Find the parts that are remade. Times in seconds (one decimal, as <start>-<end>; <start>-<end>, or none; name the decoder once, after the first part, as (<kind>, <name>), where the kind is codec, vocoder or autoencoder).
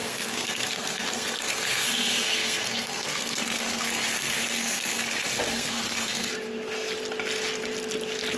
0.0-5.0 (codec, SNAC); 5.5-6.3